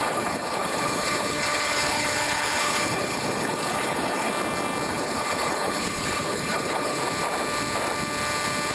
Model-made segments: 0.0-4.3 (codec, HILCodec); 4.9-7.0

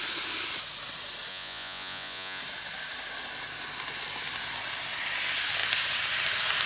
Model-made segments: 1.3-2.4 (vocoder, Vocos)

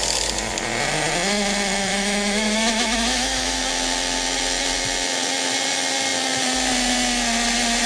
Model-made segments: 1.9-3.6 (autoencoder, DAC-VAE)

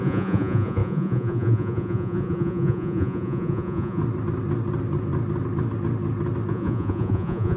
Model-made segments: 0.0-4.0 (vocoder, Vocos); 6.5-7.6

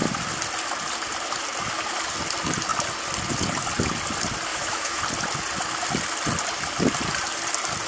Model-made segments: 4.5-5.0 (autoencoder, DAC-VAE)